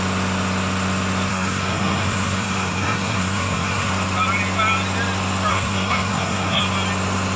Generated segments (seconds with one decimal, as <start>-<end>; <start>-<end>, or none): 1.3-3.9; 5.5-6.6